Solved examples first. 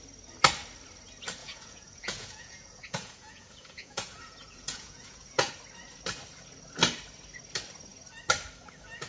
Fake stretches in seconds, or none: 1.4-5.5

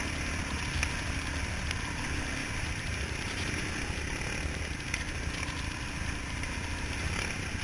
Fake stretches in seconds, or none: 2.4-3.6

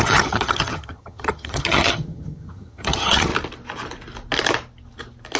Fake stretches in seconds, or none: 0.0-3.3

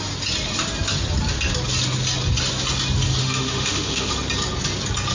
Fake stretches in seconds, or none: 3.2-4.1

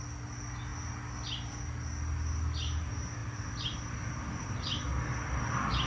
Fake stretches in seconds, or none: none

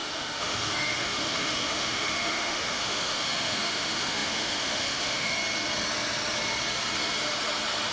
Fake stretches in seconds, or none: 0.0-5.4

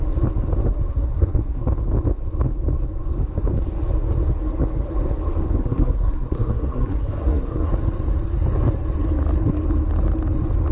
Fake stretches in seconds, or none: 0.9-1.6; 5.6-7.7

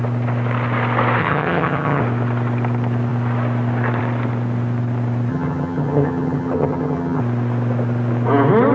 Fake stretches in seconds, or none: 1.2-2.0; 5.3-7.2